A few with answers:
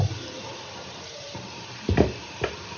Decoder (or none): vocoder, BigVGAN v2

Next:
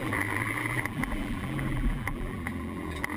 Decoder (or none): vocoder, BigVGAN v2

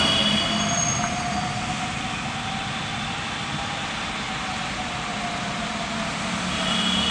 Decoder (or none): none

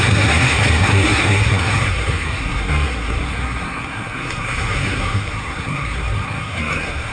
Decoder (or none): codec, SNAC